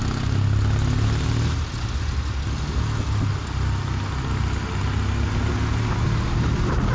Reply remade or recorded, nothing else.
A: recorded